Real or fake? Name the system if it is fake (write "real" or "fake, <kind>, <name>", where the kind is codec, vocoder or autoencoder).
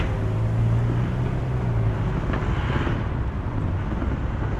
real